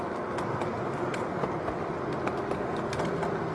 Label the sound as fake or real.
real